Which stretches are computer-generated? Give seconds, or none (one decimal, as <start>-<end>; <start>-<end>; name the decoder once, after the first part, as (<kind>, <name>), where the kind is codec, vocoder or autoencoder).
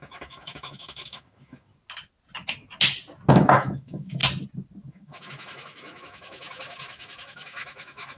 0.0-1.7 (autoencoder, DAC-VAE); 3.3-4.2; 4.9-8.2